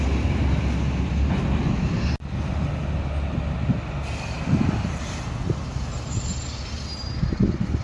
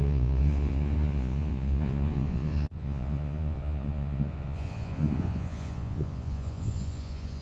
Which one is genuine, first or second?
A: first